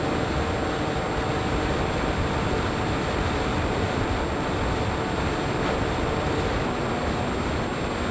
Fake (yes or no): no